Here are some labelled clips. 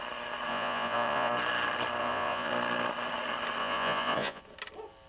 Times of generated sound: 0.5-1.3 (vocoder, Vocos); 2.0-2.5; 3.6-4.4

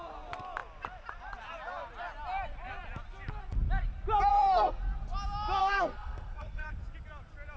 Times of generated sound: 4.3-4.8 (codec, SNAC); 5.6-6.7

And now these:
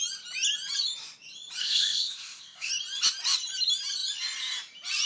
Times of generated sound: 1.6-2.7 (codec, ZipCodec)

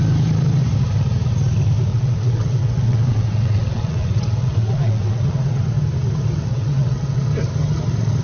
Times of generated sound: 1.9-5.7 (vocoder, WaveNeXt); 6.5-7.2